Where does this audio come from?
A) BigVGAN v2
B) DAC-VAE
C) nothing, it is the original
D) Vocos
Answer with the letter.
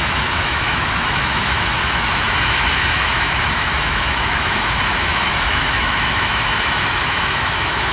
B